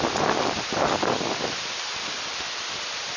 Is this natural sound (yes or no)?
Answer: yes